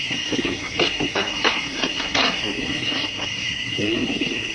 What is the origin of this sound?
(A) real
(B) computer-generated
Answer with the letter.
B